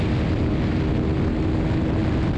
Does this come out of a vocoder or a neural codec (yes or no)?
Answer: no